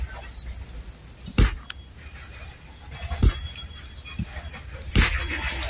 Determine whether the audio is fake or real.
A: real